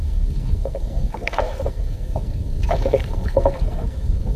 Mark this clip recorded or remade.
remade